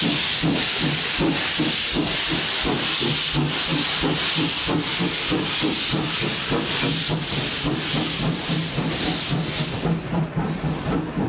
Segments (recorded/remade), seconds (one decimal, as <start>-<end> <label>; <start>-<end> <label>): 0.0-11.3 recorded